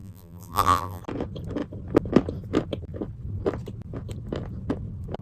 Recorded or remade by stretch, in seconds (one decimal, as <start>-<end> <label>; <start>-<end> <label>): 0.0-1.0 remade; 1.0-5.2 recorded